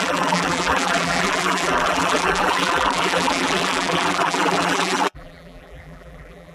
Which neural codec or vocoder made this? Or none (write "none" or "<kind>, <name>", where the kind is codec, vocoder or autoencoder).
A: vocoder, BigVGAN v2